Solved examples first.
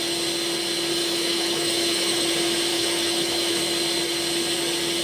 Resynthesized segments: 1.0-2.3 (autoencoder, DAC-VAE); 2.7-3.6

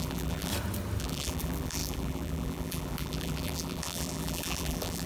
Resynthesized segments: 0.0-0.5 (vocoder, BigVGAN v2); 1.0-5.1